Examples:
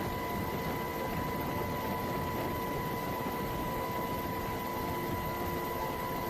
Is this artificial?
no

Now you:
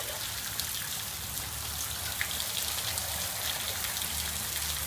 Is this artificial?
no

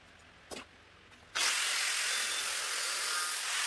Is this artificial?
no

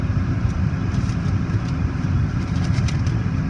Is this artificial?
yes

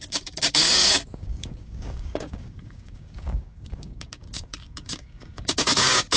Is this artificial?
yes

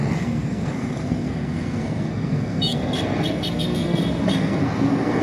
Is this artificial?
yes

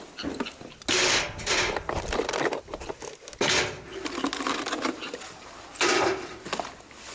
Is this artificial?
no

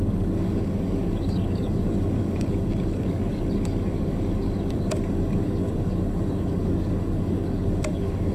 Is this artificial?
yes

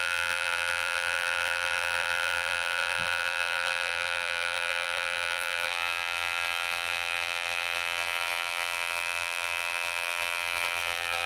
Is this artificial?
yes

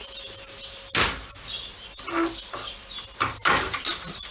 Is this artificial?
no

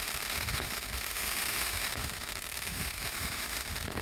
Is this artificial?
yes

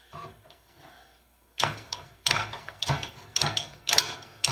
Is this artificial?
yes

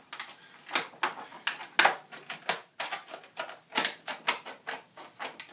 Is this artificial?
no